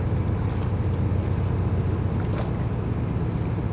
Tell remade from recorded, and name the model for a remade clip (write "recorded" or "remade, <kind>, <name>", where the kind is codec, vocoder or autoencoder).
recorded